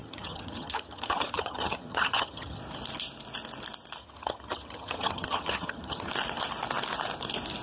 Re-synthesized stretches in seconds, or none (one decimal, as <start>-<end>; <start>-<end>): 0.0-2.6; 4.0-6.1